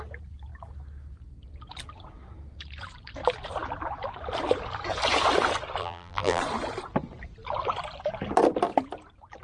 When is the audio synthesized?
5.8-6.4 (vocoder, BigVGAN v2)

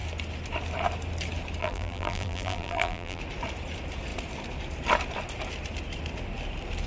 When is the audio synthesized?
1.6-3.2 (vocoder, BigVGAN v2)

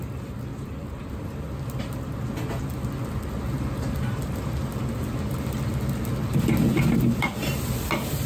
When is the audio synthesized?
0.5-1.1 (vocoder, BigVGAN v2)

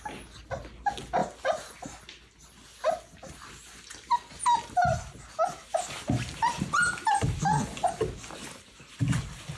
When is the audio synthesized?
none